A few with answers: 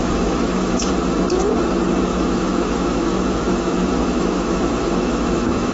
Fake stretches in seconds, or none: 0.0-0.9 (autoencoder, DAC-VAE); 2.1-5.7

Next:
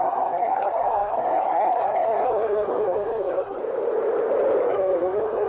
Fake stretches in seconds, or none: 0.0-3.6 (codec, SNAC); 4.6-5.5

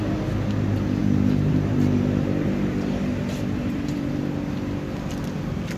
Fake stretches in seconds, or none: 1.0-4.1 (vocoder, BigVGAN v2)

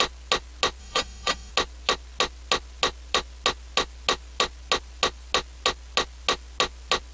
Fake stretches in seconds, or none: 0.8-1.5 (autoencoder, DAC-VAE)

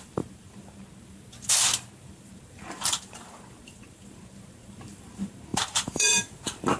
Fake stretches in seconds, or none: 0.0-0.8 (vocoder, BigVGAN v2); 2.0-6.8

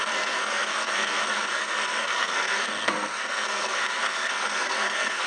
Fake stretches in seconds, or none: 0.0-5.3 (codec, SNAC)

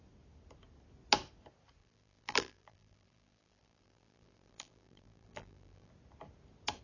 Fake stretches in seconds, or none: 1.8-5.9 (vocoder, BigVGAN v2)